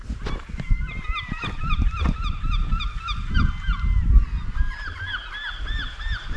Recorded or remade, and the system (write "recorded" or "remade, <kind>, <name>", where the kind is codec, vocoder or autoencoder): recorded